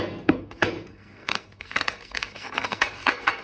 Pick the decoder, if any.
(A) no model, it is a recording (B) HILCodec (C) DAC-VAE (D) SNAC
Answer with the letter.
D